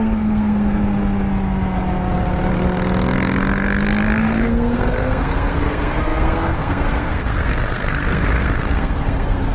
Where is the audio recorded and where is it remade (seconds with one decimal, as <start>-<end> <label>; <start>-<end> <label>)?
0.0-0.8 remade; 0.8-4.2 recorded; 4.2-9.5 remade

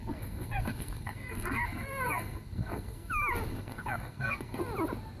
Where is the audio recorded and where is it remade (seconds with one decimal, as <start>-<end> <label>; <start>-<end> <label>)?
0.0-3.1 remade; 3.1-3.5 recorded; 3.5-4.6 remade; 4.6-5.2 recorded

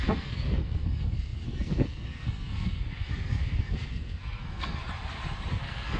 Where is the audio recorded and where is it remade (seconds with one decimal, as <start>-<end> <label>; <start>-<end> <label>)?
0.0-4.8 remade; 4.8-5.5 recorded; 5.5-6.0 remade

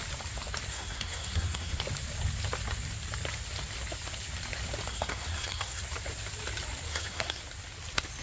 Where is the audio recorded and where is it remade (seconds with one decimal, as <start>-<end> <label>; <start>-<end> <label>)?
0.0-0.7 recorded; 0.7-1.8 remade; 1.8-4.9 recorded; 4.9-5.8 remade; 5.8-6.9 recorded; 6.9-7.4 remade; 7.4-8.2 recorded

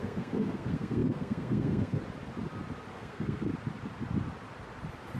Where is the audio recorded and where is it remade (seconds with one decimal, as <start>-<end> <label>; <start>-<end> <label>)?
0.0-2.0 remade; 2.0-2.9 recorded; 2.9-3.5 remade; 3.5-5.2 recorded

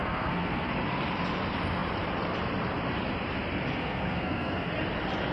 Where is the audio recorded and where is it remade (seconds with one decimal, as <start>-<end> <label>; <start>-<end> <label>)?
0.0-0.7 remade; 0.7-3.8 recorded; 3.8-4.7 remade; 4.7-5.3 recorded

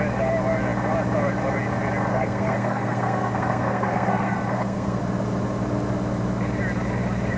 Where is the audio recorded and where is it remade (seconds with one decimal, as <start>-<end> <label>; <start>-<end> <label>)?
0.0-2.1 recorded; 2.1-5.0 remade; 5.0-7.4 recorded